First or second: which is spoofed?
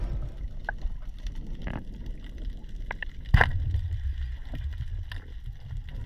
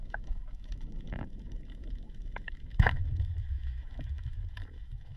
second